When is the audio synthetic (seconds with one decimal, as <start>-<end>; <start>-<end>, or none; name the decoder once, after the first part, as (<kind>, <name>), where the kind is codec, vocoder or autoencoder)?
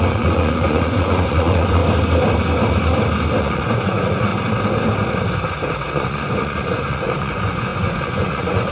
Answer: 0.0-1.8 (vocoder, Vocos); 3.4-4.3; 5.9-8.7